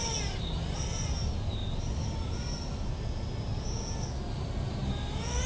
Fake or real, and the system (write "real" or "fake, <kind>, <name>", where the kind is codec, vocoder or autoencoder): real